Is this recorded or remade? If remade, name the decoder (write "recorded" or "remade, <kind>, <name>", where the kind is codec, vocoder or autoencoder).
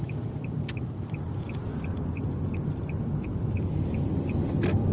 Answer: recorded